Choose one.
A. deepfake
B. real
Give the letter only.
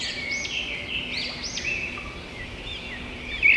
B